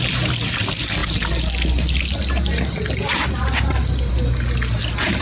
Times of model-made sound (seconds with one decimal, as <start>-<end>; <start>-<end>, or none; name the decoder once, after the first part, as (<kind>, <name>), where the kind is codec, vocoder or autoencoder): none